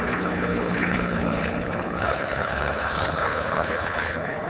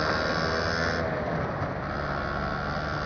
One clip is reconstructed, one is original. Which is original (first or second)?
second